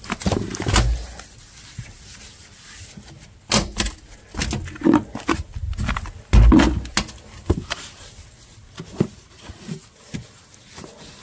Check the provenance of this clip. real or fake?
real